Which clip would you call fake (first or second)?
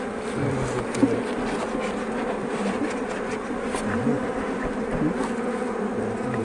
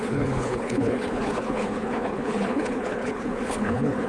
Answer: second